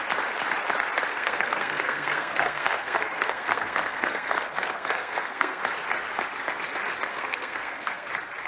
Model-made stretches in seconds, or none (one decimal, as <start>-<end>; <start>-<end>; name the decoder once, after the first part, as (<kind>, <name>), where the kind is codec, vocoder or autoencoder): 1.1-5.6 (codec, SNAC); 7.1-8.1